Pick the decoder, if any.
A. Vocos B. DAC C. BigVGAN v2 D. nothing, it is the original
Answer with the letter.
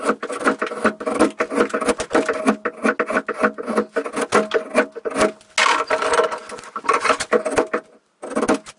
D